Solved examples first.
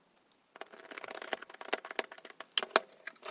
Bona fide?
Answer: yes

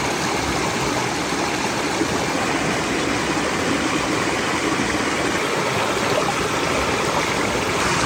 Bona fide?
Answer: yes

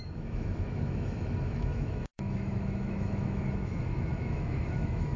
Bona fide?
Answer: no